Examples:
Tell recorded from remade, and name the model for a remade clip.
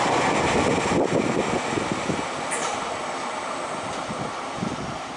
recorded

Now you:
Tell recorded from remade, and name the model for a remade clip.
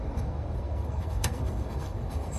remade, codec, SNAC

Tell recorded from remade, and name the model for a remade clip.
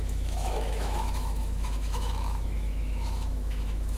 remade, autoencoder, DAC-VAE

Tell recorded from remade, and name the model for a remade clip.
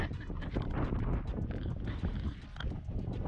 recorded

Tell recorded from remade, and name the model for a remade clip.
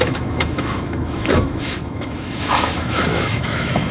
remade, autoencoder, DAC-VAE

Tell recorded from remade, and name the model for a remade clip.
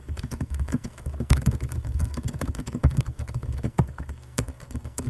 remade, codec, SNAC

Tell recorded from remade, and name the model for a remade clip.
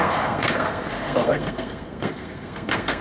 remade, codec, SNAC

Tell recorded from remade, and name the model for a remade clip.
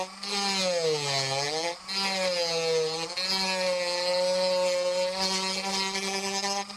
recorded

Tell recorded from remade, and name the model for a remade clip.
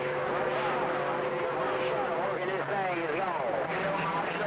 recorded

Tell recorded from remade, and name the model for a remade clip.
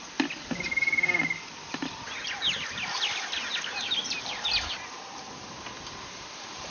recorded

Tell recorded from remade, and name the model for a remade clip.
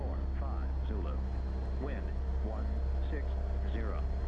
recorded